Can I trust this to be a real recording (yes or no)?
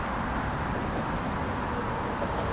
yes